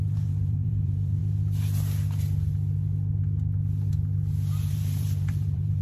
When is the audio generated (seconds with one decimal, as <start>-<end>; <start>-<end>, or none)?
0.0-1.2; 4.7-5.8